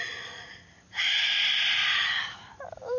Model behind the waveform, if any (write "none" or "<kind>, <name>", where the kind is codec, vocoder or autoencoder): none